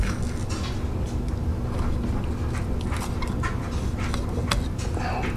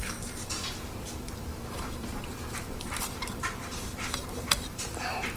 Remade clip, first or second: second